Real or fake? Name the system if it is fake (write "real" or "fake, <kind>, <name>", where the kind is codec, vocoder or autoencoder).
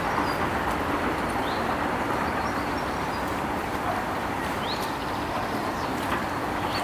fake, vocoder, BigVGAN v2